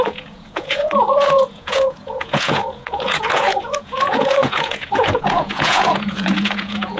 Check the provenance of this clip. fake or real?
fake